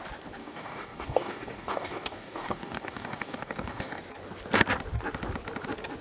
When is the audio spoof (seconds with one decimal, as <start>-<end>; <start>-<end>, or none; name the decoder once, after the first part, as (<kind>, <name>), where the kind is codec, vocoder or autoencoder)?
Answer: 0.4-4.0 (codec, DAC)